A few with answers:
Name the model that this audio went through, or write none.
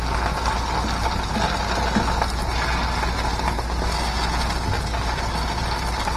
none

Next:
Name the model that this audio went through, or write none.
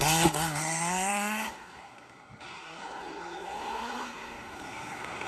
codec, SNAC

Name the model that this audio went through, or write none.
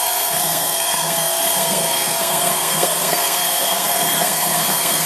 codec, SNAC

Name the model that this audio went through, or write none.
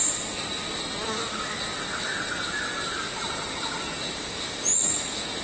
none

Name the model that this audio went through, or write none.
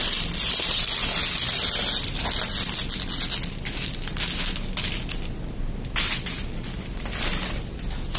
none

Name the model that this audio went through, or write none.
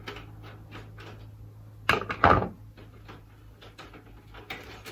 none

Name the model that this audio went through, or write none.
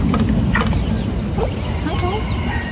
none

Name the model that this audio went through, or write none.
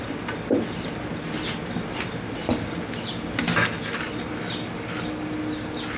none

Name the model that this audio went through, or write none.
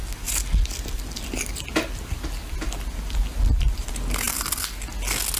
none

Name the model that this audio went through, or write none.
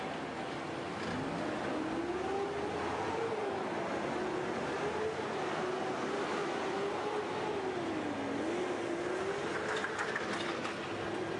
none